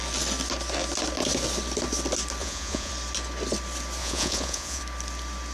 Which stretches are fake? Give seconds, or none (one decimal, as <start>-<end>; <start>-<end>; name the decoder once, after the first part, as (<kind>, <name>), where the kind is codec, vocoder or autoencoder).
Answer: 2.4-2.9 (vocoder, Vocos); 4.0-4.8